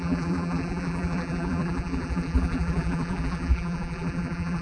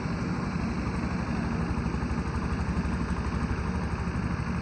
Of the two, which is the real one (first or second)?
second